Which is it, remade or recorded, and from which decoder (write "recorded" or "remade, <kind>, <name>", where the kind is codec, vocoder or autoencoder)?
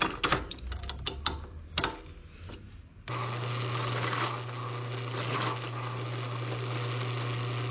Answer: recorded